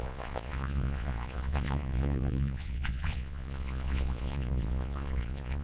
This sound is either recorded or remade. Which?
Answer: remade